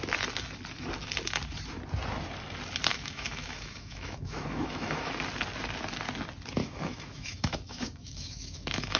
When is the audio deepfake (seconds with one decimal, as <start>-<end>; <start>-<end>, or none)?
2.9-5.1; 6.6-9.0